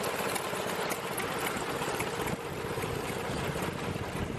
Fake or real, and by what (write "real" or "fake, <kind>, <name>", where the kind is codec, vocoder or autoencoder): real